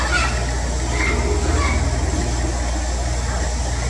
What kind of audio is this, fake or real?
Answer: real